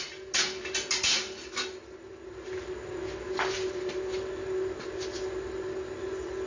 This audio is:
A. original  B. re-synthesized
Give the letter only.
A